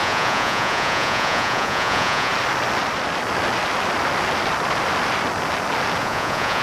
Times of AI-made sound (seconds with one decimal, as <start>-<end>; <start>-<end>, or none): 0.0-2.3; 6.0-6.6